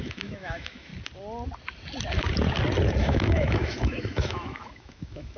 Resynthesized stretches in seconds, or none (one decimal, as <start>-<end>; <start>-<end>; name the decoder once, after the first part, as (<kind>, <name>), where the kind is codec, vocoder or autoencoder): 0.0-0.9 (autoencoder, DAC-VAE); 3.0-5.4